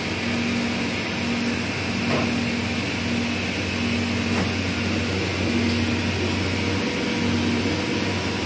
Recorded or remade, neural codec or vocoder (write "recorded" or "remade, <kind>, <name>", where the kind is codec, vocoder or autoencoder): recorded